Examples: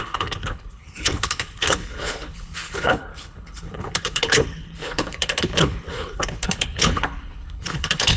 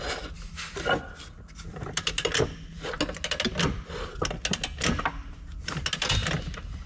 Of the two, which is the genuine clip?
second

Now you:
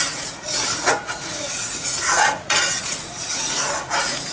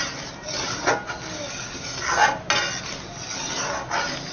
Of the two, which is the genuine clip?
second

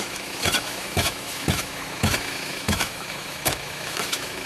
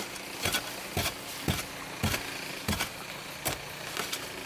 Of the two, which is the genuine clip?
second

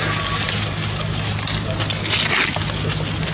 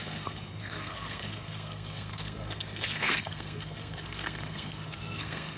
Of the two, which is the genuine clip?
first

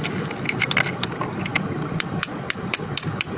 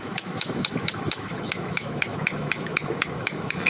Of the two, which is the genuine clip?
first